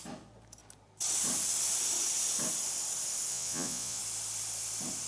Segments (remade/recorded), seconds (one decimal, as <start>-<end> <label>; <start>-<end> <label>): 0.0-3.3 recorded; 3.3-4.0 remade; 4.0-5.1 recorded

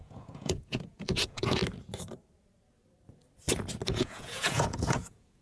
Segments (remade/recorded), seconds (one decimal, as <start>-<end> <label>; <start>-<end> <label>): 0.0-1.6 remade; 1.6-3.9 recorded; 3.9-5.4 remade

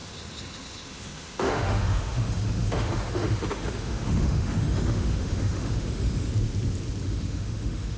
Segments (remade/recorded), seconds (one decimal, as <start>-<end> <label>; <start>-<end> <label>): 0.0-6.3 remade; 6.3-7.0 recorded; 7.0-8.0 remade

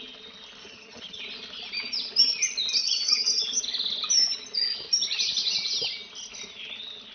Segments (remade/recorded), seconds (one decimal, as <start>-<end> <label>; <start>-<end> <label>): 0.0-0.6 recorded; 0.6-1.2 remade; 1.2-2.8 recorded; 2.8-3.6 remade; 3.6-7.1 recorded

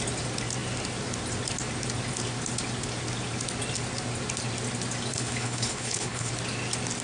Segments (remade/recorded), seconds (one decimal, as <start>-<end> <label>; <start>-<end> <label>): 0.0-5.1 recorded; 5.1-6.3 remade; 6.3-7.0 recorded

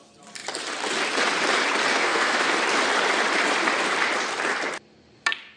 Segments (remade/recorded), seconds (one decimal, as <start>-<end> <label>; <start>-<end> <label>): 0.0-1.9 recorded; 1.9-2.5 remade; 2.5-5.6 recorded

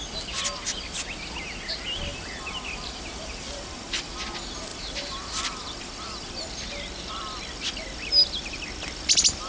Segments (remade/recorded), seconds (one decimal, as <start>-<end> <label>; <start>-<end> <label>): 0.0-2.1 recorded; 2.1-4.1 remade; 4.1-4.7 recorded; 4.7-6.3 remade; 6.3-9.5 recorded

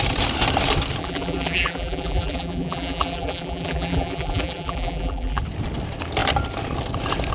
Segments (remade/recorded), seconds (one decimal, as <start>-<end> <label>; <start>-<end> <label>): 0.0-1.0 recorded; 1.0-5.4 remade; 5.4-7.3 recorded